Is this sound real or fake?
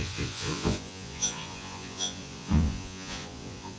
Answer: fake